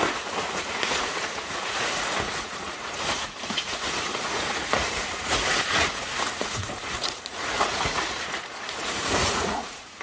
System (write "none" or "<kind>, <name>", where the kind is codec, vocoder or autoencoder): vocoder, Vocos